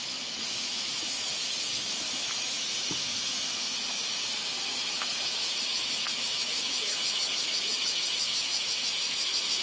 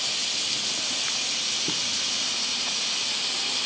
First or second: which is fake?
first